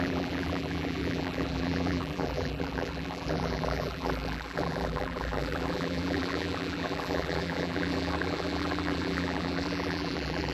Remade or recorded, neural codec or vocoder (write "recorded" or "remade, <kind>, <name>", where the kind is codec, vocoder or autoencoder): remade, vocoder, BigVGAN v2